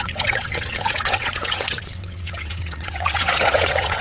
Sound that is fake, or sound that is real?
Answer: fake